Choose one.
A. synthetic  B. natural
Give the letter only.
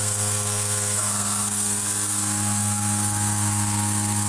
A